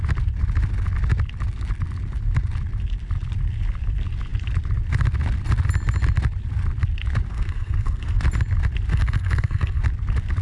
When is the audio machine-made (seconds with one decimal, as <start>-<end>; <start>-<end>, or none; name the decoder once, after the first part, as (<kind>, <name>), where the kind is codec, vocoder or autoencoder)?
7.3-8.2 (codec, SNAC); 8.9-9.8